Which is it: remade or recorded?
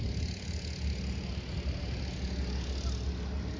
recorded